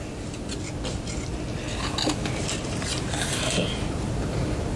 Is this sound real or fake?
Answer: real